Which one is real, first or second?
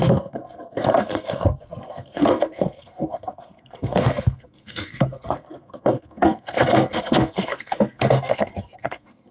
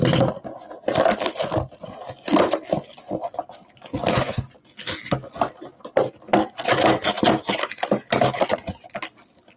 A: second